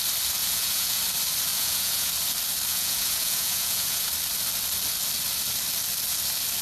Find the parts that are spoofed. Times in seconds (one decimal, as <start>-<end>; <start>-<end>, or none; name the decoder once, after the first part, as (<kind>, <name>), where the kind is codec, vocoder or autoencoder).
0.4-1.0 (vocoder, Vocos); 1.5-2.1; 2.7-4.1